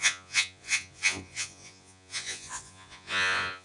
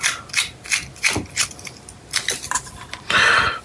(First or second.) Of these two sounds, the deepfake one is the first